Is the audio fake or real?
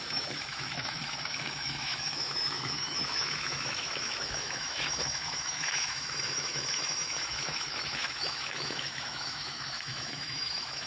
fake